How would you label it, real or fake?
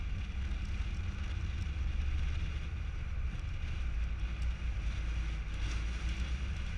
real